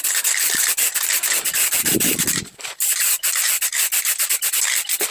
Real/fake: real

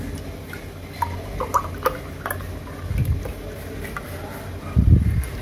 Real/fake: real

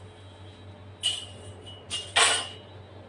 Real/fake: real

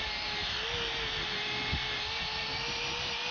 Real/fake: real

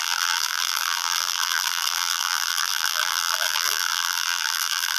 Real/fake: fake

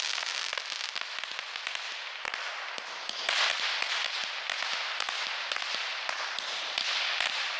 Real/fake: real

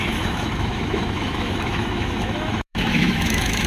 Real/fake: fake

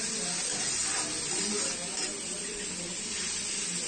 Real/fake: real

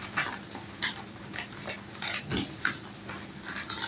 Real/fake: real